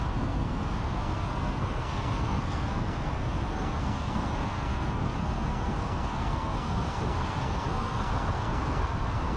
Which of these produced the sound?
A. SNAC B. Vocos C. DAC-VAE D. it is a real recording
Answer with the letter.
A